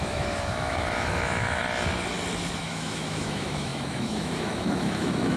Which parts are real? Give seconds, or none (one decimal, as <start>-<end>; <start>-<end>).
1.6-2.6